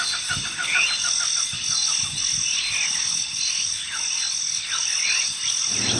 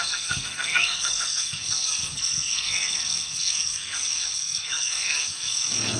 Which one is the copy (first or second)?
second